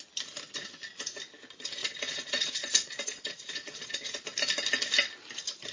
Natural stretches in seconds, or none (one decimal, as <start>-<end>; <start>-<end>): 0.0-1.8; 4.2-5.7